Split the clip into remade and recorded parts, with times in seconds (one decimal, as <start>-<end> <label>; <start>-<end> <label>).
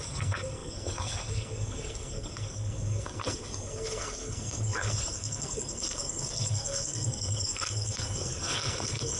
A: 0.0-9.2 remade